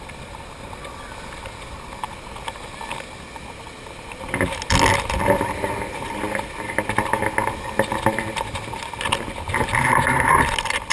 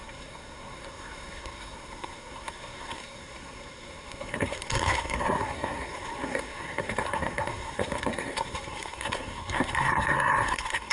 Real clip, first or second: first